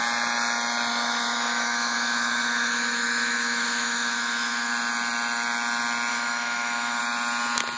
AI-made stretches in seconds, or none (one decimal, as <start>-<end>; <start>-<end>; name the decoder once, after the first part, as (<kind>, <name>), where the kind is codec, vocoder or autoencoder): 0.9-4.7 (autoencoder, DAC-VAE); 6.1-7.0